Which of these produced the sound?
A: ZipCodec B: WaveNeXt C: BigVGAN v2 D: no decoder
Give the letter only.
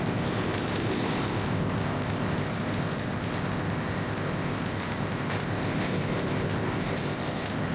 A